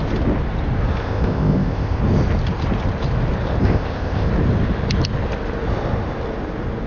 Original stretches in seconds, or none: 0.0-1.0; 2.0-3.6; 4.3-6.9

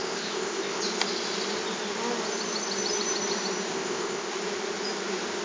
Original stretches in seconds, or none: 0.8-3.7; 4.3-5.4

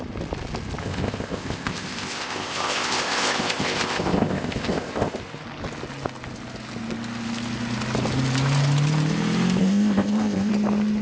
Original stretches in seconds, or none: 0.0-0.8; 5.2-9.6; 10.5-11.0

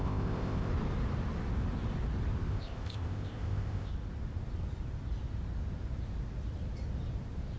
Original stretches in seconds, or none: 0.7-2.5; 3.9-7.6

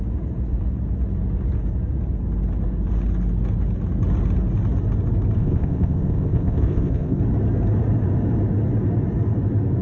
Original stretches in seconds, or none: 0.0-5.4; 7.2-9.8

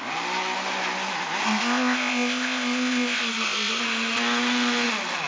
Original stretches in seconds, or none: 0.0-1.4; 3.8-5.3

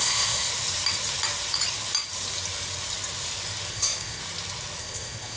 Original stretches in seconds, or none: 0.5-3.7; 4.2-4.8

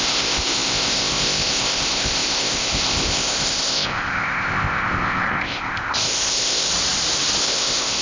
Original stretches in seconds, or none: 6.7-7.4